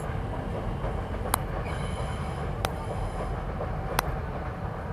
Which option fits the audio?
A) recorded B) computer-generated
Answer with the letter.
A